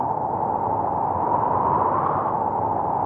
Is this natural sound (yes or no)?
yes